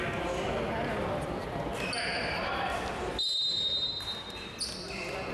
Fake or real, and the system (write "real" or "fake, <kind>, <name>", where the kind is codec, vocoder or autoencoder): real